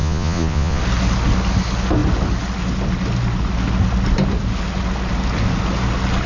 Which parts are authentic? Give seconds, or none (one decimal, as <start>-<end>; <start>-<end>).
0.8-6.3